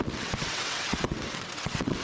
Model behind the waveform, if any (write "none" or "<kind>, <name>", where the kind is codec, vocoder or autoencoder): vocoder, WaveNeXt